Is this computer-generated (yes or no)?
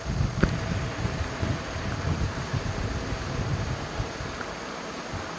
no